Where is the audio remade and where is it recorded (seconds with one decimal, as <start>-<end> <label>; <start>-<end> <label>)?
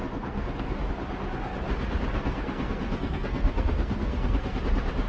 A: 0.0-0.9 remade; 0.9-2.1 recorded; 2.1-4.6 remade; 4.6-5.1 recorded